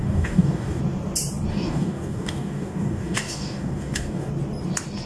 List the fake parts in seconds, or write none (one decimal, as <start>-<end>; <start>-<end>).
0.0-0.8; 1.5-4.3